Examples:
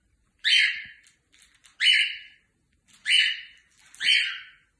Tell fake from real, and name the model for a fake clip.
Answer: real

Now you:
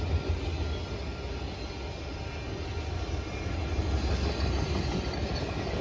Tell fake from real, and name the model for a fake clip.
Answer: real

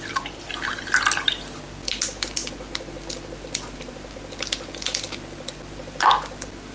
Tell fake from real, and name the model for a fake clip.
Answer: real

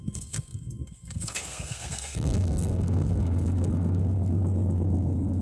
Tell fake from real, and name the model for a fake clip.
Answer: fake, codec, SNAC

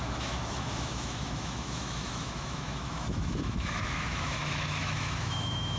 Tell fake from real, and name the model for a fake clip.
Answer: fake, autoencoder, DAC-VAE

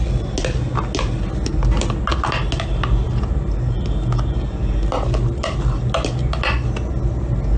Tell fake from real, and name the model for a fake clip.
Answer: real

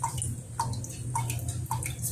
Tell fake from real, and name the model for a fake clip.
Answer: real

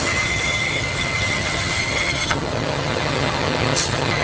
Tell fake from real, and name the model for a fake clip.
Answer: fake, vocoder, HiFi-GAN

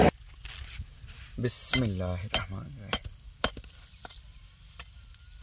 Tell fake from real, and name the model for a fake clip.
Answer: real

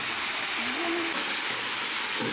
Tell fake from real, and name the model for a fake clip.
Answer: real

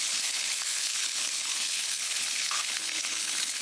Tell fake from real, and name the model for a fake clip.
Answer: fake, codec, HILCodec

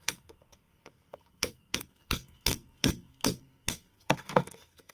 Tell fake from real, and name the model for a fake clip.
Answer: fake, codec, SNAC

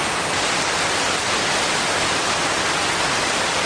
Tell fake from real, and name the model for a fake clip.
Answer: real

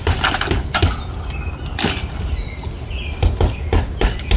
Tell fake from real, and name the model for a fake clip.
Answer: real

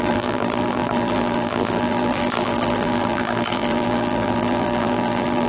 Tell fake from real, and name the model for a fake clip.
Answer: fake, vocoder, BigVGAN v2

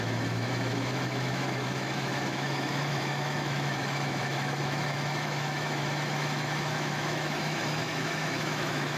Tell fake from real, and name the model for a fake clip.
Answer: fake, autoencoder, DAC-VAE